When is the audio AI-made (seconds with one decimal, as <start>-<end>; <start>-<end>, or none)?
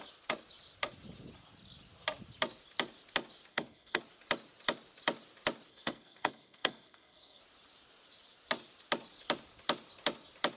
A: 3.5-4.0; 5.7-7.4